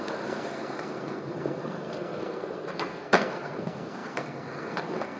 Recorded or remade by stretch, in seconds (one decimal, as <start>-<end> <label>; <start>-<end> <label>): 0.0-5.2 remade